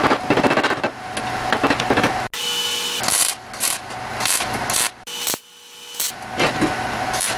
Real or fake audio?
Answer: real